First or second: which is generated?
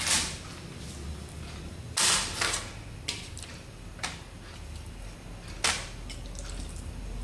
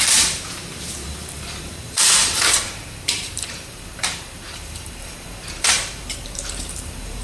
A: second